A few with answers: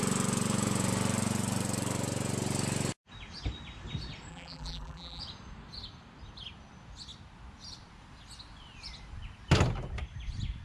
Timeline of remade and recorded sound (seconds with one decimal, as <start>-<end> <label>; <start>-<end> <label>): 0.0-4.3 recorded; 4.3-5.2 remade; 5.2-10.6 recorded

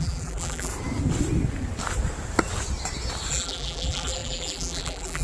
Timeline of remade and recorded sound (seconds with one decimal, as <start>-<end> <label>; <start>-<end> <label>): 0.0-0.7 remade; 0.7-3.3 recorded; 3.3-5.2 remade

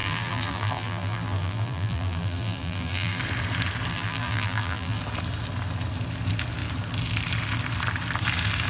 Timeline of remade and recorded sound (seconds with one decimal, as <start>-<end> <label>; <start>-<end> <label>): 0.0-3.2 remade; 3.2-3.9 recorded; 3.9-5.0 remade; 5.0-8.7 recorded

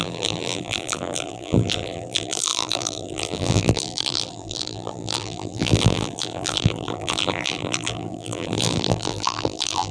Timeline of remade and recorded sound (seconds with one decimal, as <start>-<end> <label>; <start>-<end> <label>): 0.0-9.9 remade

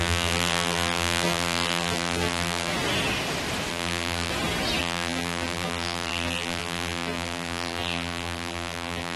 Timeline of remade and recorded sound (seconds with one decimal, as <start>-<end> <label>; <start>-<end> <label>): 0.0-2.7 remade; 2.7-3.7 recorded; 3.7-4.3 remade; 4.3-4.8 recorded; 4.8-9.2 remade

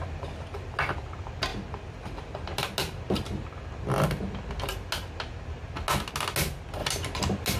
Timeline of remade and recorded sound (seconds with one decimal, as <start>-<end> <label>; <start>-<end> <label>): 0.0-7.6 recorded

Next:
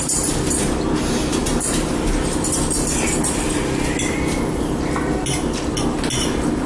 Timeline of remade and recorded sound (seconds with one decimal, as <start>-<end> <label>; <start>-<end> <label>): 0.0-1.3 recorded; 1.3-5.3 remade; 5.3-6.7 recorded